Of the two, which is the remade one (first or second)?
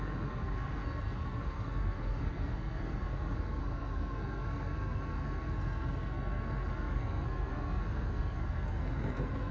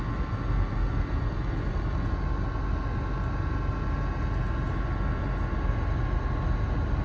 first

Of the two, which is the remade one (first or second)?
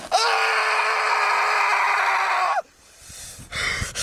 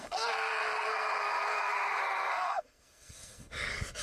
second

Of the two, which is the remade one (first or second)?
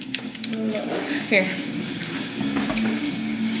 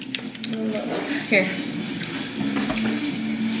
first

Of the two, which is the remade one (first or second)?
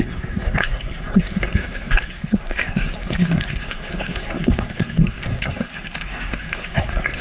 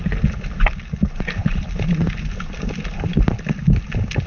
first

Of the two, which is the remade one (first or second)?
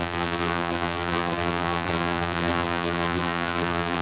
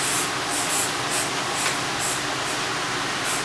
first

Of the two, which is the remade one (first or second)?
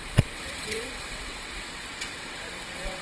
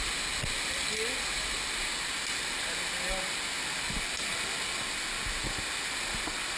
first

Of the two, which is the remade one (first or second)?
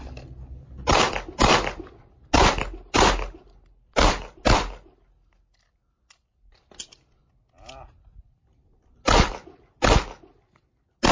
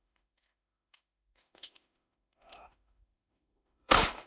second